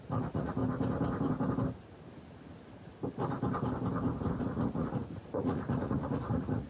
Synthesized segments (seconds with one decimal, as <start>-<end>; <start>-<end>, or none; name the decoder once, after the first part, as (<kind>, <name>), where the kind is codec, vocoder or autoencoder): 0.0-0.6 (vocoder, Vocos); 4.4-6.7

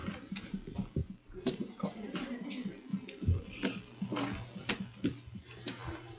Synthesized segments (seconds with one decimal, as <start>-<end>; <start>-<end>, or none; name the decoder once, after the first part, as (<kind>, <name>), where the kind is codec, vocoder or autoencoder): 0.0-0.5 (vocoder, BigVGAN v2); 1.0-2.5

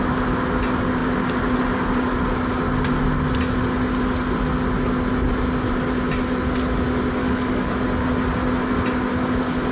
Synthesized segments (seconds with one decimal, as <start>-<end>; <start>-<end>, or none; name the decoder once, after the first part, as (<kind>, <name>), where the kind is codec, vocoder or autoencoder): 7.2-7.7 (codec, DAC)

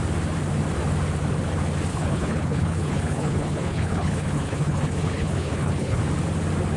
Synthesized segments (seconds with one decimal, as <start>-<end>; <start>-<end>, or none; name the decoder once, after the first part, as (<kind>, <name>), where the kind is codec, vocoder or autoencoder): 1.9-6.0 (codec, HILCodec)

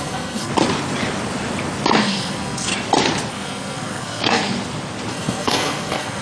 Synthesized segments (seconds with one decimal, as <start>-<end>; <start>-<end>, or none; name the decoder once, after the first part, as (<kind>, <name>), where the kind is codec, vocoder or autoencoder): 0.0-0.5 (codec, SNAC); 2.0-2.7; 3.3-4.4; 5.1-6.2

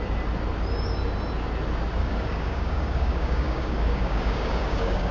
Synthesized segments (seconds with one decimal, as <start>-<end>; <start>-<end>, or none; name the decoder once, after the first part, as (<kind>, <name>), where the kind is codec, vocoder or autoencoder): 2.0-5.1 (codec, DAC)